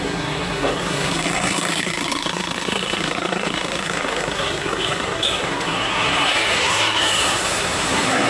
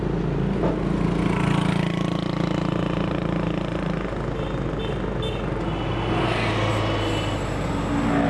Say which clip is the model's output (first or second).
first